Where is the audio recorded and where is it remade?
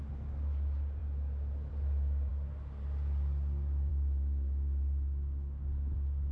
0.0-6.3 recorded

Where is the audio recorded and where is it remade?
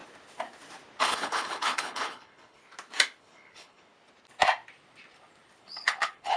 0.0-1.0 recorded; 1.0-2.6 remade; 2.6-3.2 recorded; 3.2-3.9 remade; 3.9-5.6 recorded; 5.6-6.4 remade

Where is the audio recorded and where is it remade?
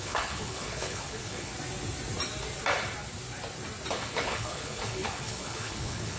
0.0-1.5 remade; 1.5-3.9 recorded; 3.9-6.2 remade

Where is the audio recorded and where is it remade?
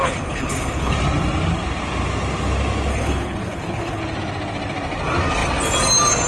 0.0-0.9 remade; 0.9-2.9 recorded; 2.9-4.0 remade; 4.0-6.3 recorded